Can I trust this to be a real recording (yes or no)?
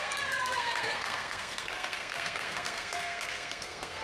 no